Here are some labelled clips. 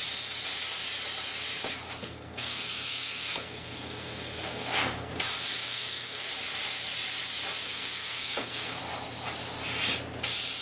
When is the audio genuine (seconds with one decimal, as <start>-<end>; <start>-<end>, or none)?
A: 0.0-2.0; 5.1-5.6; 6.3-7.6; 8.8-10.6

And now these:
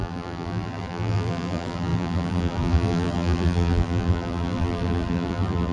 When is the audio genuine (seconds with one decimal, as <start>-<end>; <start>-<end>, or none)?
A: none

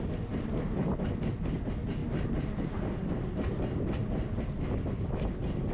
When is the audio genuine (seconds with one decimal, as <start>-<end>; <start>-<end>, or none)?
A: 0.0-2.0; 3.6-5.7